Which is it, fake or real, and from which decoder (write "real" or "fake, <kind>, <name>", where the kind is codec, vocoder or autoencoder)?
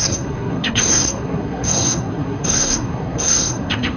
fake, codec, SNAC